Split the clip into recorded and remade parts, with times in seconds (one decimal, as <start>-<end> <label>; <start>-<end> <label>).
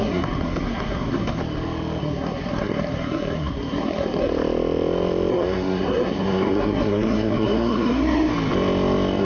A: 0.0-1.4 remade; 1.4-2.0 recorded; 2.0-4.3 remade; 4.3-5.3 recorded; 5.3-8.3 remade; 8.3-9.2 recorded